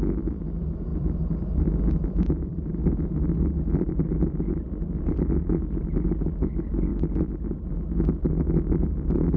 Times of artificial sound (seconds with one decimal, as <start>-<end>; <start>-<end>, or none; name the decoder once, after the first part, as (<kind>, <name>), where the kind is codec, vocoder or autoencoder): 0.9-5.4 (vocoder, BigVGAN v2); 6.9-7.7